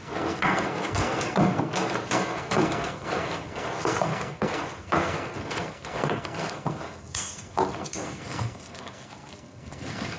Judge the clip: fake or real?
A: fake